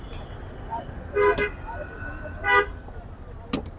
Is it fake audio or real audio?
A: real